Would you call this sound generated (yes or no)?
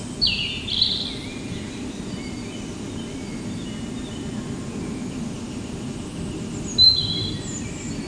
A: no